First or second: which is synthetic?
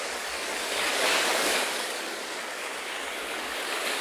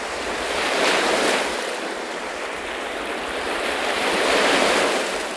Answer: first